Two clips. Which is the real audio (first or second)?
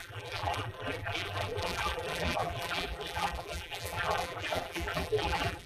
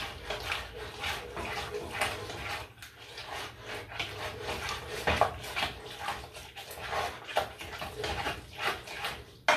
second